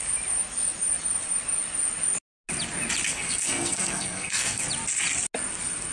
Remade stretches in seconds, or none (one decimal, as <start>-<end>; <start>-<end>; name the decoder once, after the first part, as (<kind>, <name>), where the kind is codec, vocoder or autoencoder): 3.1-4.6 (codec, SNAC)